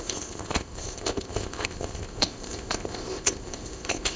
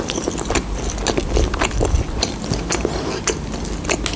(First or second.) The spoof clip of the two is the first